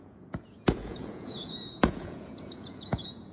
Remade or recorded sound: remade